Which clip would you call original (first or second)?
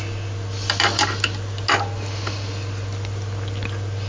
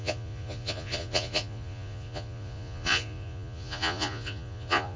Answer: first